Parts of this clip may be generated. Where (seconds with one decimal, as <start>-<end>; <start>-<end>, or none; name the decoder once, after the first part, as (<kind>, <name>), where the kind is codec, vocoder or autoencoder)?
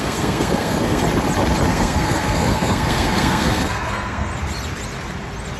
0.0-1.0 (codec, SNAC); 1.7-4.3